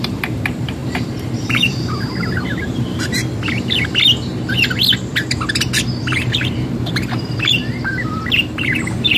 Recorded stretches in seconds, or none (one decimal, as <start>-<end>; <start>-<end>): 0.8-1.4; 3.2-6.7